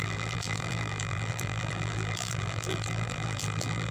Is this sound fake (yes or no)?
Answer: yes